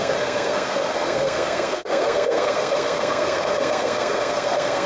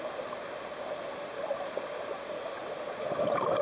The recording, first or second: second